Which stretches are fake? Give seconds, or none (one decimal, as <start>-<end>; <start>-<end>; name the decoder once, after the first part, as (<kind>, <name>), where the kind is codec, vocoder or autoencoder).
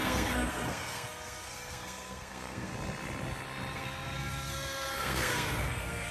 0.0-2.7 (codec, SNAC); 3.7-6.1